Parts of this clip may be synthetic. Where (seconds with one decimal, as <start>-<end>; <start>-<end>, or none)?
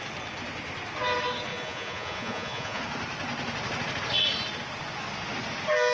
1.5-2.8